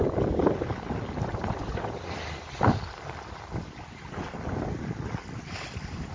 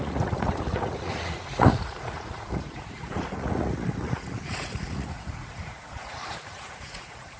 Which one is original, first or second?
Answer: first